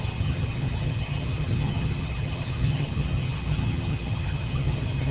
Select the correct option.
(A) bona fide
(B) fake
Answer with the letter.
B